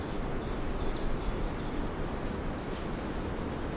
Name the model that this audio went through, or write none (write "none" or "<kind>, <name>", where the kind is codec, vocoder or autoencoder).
none